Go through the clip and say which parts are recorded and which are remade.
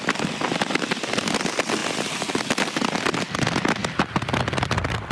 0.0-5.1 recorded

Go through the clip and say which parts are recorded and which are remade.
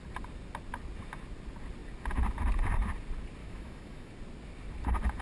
0.0-3.4 recorded; 3.4-4.1 remade; 4.1-5.2 recorded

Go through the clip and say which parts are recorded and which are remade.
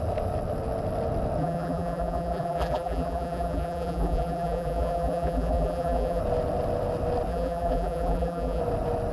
0.0-1.4 recorded; 1.4-6.2 remade; 6.2-7.3 recorded; 7.3-8.6 remade; 8.6-9.1 recorded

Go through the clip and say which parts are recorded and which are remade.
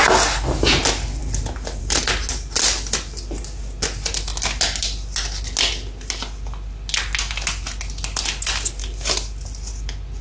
0.0-10.2 recorded